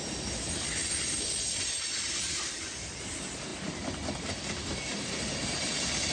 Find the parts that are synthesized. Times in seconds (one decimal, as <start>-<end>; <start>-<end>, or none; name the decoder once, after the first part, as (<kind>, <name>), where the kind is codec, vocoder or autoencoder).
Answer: none